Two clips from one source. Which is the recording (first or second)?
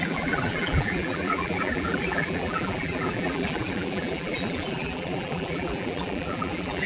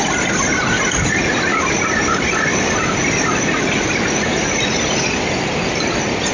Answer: second